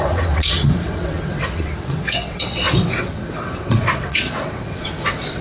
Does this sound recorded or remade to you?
remade